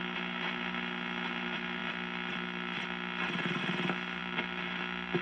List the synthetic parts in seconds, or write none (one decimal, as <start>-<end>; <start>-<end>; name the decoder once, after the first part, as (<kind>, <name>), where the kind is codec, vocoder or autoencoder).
none